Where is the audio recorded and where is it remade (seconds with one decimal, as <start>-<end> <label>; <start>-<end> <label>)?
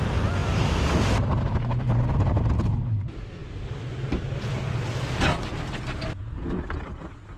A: 0.0-7.4 recorded